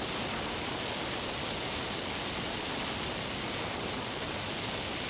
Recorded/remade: recorded